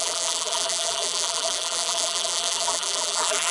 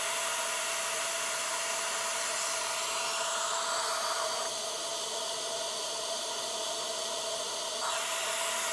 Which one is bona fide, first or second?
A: second